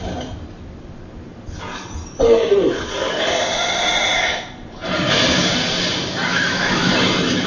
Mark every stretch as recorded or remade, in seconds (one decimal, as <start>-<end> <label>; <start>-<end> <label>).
0.0-6.3 recorded; 6.3-6.9 remade; 6.9-7.5 recorded